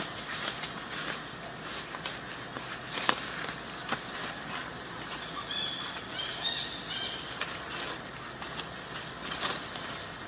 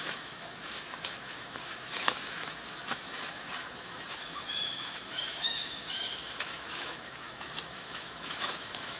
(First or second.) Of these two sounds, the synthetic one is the second